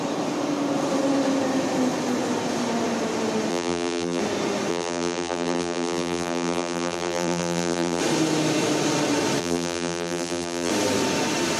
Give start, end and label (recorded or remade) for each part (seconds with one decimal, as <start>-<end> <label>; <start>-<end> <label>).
0.0-3.5 recorded; 3.5-4.2 remade; 4.2-4.7 recorded; 4.7-8.0 remade; 8.0-9.4 recorded; 9.4-10.7 remade; 10.7-11.6 recorded